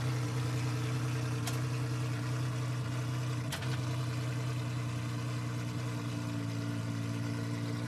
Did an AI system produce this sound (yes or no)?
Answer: no